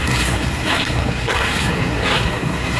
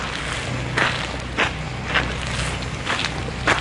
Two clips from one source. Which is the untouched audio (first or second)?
second